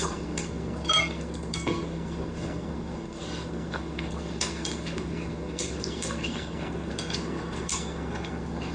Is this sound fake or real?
fake